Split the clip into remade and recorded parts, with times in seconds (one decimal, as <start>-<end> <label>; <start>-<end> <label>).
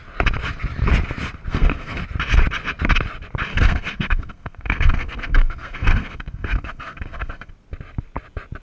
0.0-1.5 recorded; 1.5-2.0 remade; 2.0-3.5 recorded; 3.5-7.5 remade; 7.5-8.6 recorded